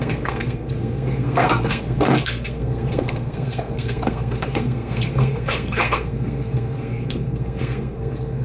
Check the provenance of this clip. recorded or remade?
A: remade